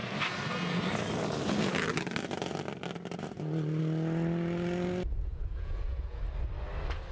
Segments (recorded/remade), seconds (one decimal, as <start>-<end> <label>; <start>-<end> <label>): 0.0-5.1 recorded; 5.1-6.2 remade; 6.2-7.1 recorded